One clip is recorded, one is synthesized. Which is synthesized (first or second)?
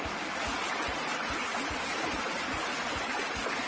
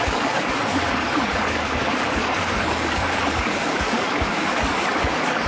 second